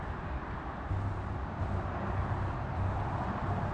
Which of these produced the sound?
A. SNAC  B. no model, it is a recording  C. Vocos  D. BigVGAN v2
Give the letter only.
B